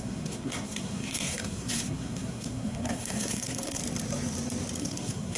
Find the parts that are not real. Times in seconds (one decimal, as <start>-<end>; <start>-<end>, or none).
0.0-3.8; 4.8-5.4